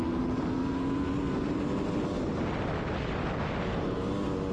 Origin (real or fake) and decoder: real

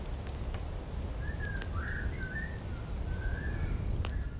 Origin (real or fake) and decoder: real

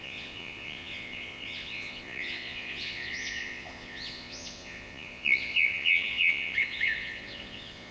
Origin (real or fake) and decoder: fake, vocoder, Vocos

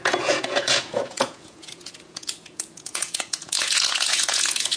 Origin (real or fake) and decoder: fake, vocoder, Vocos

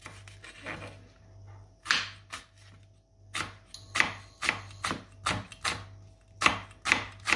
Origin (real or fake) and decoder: real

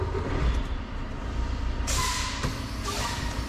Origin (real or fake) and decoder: real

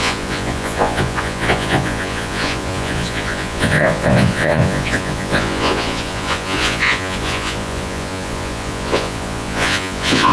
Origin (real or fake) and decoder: fake, vocoder, Vocos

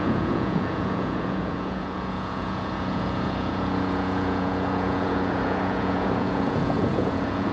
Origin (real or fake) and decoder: fake, vocoder, Vocos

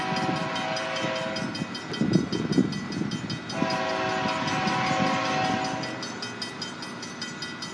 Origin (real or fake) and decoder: real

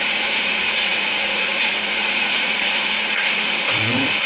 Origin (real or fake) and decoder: fake, vocoder, Vocos